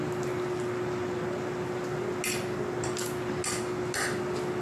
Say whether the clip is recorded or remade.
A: recorded